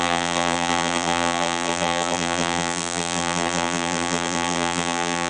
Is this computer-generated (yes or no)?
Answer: yes